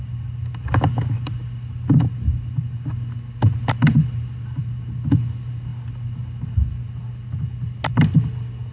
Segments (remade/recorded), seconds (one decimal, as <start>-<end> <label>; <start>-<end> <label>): 0.0-8.7 recorded